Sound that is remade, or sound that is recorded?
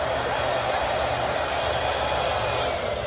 recorded